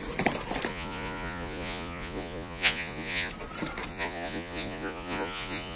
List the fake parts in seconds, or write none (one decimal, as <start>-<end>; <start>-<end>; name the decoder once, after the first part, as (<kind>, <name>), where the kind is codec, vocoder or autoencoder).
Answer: 0.7-3.3 (vocoder, Vocos); 3.9-5.8